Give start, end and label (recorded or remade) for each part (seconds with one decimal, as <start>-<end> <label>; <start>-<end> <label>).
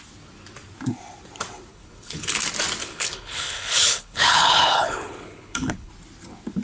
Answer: 0.0-1.7 recorded; 1.7-2.4 remade; 2.4-2.8 recorded; 2.8-5.9 remade; 5.9-6.6 recorded